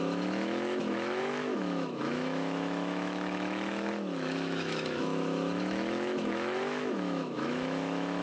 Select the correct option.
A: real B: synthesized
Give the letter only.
B